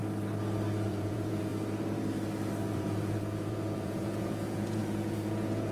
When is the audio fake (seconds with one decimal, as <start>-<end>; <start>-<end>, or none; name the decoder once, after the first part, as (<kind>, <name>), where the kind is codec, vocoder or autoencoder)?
0.9-1.5 (vocoder, Vocos); 2.7-5.7

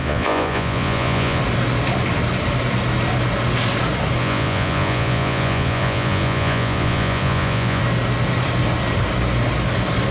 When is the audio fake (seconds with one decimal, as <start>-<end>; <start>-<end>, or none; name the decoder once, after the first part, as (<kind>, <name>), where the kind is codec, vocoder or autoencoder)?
0.0-1.4 (vocoder, Vocos); 4.2-7.8